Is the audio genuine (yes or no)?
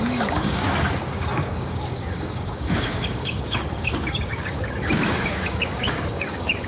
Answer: no